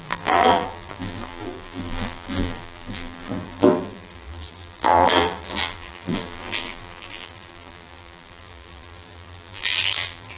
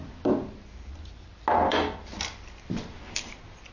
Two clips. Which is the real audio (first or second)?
second